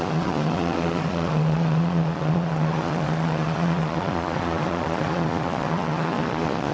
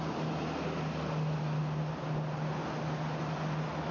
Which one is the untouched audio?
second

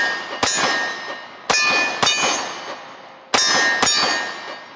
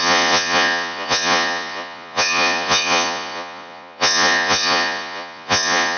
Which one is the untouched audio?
first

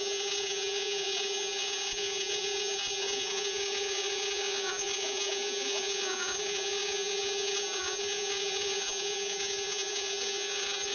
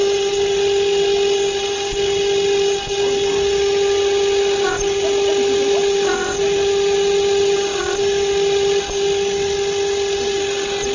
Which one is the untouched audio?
second